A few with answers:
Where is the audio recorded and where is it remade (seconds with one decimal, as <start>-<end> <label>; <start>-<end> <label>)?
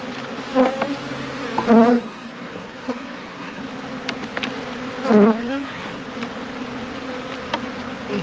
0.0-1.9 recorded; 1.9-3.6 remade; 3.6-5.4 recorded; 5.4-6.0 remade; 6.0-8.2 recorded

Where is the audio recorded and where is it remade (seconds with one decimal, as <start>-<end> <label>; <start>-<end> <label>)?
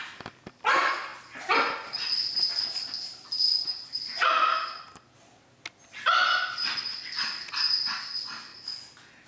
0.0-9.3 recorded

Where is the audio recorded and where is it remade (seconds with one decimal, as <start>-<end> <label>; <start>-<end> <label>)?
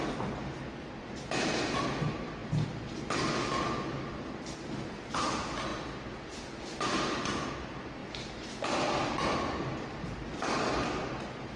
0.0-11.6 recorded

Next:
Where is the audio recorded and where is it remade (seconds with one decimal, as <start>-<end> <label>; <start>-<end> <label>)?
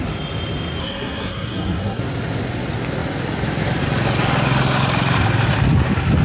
0.0-0.8 recorded; 0.8-2.0 remade; 2.0-6.2 recorded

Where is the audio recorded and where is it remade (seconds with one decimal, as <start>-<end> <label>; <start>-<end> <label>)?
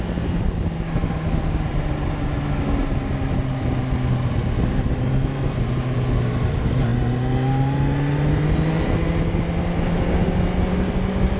0.0-11.4 recorded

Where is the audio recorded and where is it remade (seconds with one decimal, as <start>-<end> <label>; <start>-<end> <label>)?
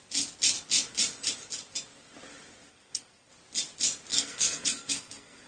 0.0-2.7 recorded; 2.7-3.3 remade; 3.3-4.1 recorded; 4.1-5.5 remade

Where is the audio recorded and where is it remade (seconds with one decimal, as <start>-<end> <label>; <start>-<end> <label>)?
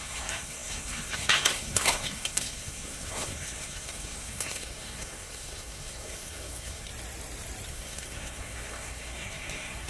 0.0-6.9 remade; 6.9-7.7 recorded; 7.7-9.9 remade